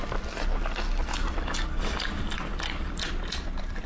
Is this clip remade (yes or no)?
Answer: no